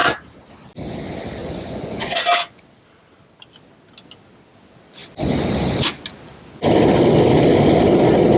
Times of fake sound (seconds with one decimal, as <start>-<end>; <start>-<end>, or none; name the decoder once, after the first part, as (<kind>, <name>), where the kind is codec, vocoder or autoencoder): 1.4-2.6 (vocoder, Vocos)